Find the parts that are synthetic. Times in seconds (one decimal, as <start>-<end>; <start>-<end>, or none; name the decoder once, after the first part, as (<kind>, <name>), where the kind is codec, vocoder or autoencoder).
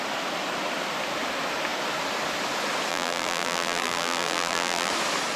2.9-4.9 (vocoder, BigVGAN v2)